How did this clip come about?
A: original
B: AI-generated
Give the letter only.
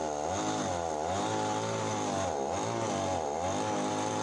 A